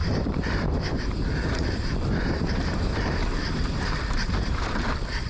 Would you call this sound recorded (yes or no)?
no